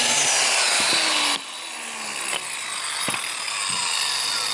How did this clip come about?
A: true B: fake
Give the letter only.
A